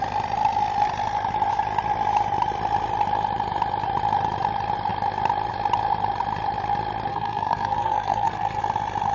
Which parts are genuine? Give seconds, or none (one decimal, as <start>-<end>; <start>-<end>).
0.0-7.1; 8.6-9.1